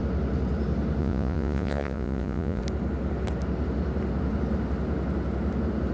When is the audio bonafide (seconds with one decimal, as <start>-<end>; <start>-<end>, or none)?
0.0-1.0; 2.6-5.9